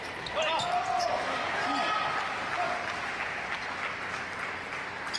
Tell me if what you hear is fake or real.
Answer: real